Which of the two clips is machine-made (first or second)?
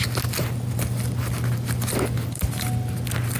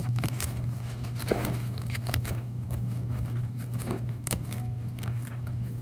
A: second